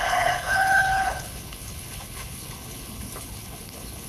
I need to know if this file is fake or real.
fake